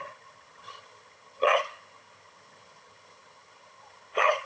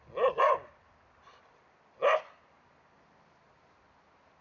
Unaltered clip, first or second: second